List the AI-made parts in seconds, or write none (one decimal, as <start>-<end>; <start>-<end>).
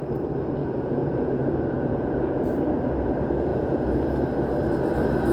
0.6-2.4; 3.5-4.2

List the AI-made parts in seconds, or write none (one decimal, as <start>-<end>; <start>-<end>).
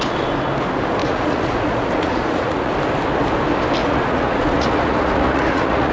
1.0-2.7; 3.8-5.9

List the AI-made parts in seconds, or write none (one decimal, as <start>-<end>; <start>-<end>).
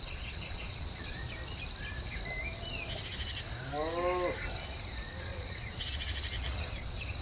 0.0-1.4; 5.2-7.2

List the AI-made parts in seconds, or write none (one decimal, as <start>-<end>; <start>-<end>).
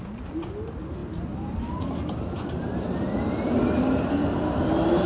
none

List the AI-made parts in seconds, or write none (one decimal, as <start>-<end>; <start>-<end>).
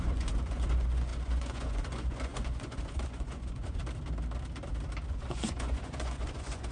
0.0-3.8; 5.1-6.7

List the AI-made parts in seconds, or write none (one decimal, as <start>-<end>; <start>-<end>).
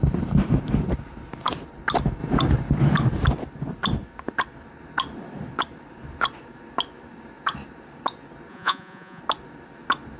8.5-9.2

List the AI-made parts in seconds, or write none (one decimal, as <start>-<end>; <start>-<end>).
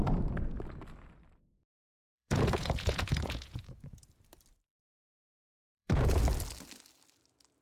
1.8-4.1; 5.6-6.2